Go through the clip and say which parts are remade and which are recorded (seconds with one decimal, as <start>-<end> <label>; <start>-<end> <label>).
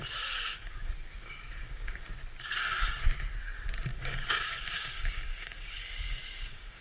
0.0-0.9 remade; 0.9-1.6 recorded; 1.6-2.1 remade; 2.1-3.9 recorded; 3.9-6.8 remade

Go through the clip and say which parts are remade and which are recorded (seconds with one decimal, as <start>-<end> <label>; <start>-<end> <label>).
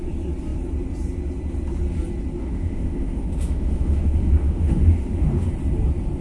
0.0-2.4 recorded; 2.4-5.5 remade; 5.5-6.2 recorded